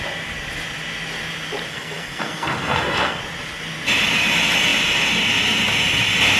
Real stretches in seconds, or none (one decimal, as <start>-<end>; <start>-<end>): 0.0-1.7; 3.2-6.4